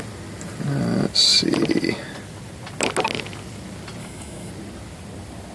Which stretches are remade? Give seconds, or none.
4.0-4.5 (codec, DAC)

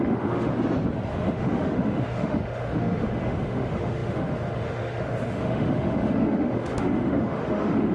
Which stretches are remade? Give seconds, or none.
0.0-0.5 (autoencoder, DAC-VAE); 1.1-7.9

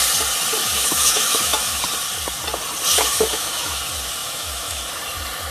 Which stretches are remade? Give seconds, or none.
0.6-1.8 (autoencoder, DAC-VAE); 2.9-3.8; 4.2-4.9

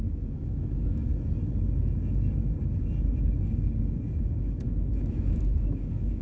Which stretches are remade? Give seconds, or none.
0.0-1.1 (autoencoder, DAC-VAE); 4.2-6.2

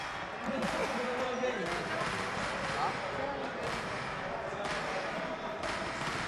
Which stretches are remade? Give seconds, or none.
none

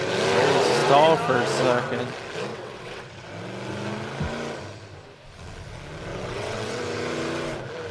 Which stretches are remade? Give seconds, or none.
2.5-3.3 (vocoder, WaveNeXt); 6.1-6.8

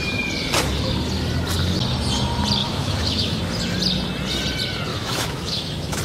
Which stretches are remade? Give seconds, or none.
2.6-3.4 (autoencoder, DAC-VAE); 4.9-6.0

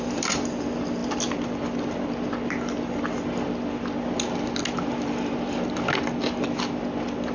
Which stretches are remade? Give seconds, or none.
none